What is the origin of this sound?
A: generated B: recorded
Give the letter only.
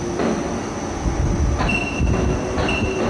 B